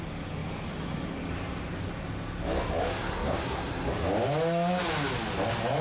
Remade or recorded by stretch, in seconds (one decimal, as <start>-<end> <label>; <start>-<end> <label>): 0.0-2.9 recorded; 2.9-3.9 remade; 3.9-5.8 recorded

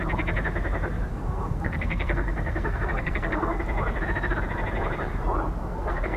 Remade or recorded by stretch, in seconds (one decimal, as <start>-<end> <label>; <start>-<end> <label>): 0.0-1.1 recorded; 1.1-3.6 remade; 3.6-5.6 recorded; 5.6-6.2 remade